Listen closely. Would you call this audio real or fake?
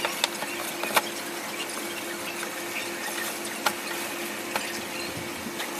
real